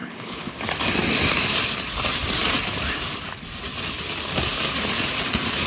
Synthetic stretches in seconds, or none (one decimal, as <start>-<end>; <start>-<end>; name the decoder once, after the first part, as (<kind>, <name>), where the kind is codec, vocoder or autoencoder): 0.0-0.6 (codec, HILCodec)